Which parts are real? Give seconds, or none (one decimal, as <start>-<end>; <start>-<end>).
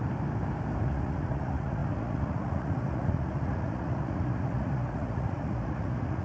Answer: 0.0-0.8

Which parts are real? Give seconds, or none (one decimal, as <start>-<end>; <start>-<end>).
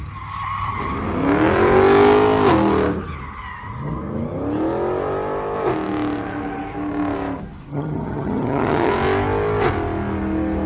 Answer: 0.0-7.7; 8.9-10.7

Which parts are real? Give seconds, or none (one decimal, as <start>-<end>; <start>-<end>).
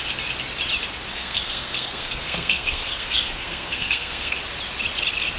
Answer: 0.0-1.1; 4.3-5.4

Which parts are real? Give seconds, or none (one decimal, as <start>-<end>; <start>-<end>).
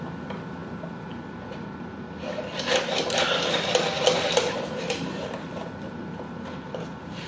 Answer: 0.0-7.3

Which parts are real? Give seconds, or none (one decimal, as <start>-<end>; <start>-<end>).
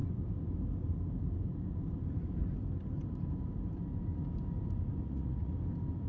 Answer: 0.0-5.0; 5.5-6.1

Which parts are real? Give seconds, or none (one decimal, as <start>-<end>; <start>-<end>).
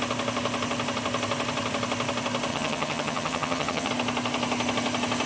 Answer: 0.0-2.5; 3.9-5.3